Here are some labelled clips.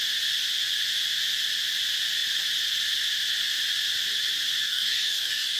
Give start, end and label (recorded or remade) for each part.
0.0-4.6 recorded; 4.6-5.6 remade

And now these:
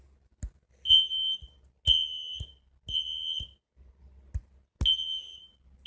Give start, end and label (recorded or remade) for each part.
0.0-5.9 recorded